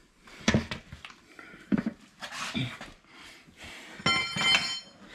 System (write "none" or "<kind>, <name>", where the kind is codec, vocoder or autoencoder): none